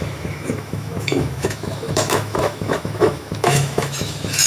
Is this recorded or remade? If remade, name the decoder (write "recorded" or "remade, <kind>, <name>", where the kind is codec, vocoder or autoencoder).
remade, autoencoder, DAC-VAE